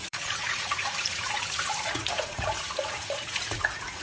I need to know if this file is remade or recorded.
remade